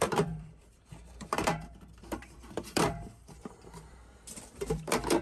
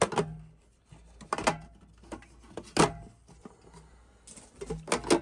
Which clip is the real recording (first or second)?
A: second